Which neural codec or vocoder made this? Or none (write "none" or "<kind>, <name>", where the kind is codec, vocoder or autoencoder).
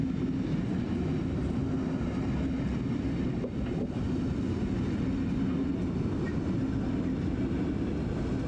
none